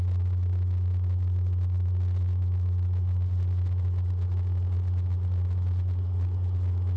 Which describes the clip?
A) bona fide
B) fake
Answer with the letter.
A